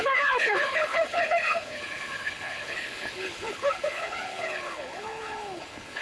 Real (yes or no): no